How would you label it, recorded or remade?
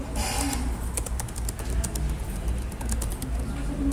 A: recorded